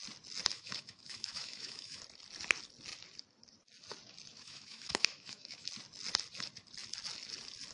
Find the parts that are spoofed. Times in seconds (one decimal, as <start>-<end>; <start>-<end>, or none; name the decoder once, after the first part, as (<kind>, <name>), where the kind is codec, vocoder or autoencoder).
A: 0.5-2.0 (autoencoder, DAC-VAE); 4.3-5.7